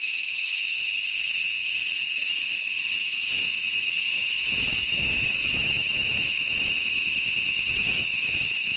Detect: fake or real fake